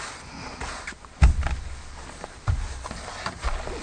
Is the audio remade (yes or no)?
no